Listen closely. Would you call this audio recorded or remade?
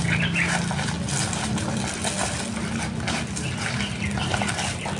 recorded